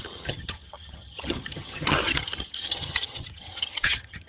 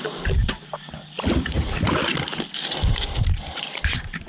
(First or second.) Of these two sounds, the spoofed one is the first